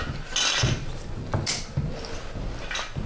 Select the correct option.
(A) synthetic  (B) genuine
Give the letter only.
B